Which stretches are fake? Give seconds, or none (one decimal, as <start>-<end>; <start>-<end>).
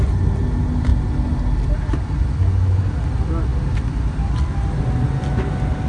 none